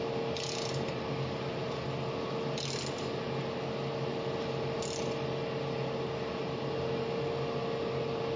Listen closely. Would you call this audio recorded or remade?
recorded